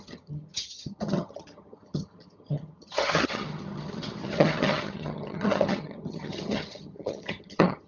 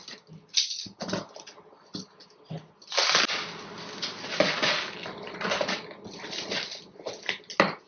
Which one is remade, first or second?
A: first